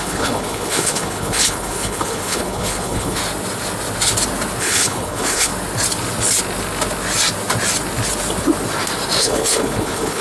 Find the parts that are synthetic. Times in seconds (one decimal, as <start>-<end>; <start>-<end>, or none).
0.0-3.2; 4.6-5.5; 9.2-10.2